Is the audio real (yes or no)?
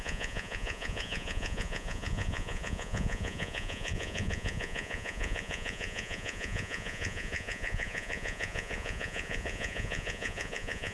no